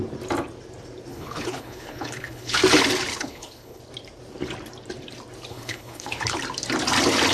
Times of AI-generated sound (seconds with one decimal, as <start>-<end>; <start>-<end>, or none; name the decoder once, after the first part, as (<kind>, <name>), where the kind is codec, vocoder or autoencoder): 1.1-2.6 (codec, HILCodec); 3.1-3.8; 5.5-6.4